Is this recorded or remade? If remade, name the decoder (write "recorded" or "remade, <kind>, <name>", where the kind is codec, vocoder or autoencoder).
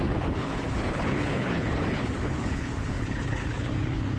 remade, codec, HILCodec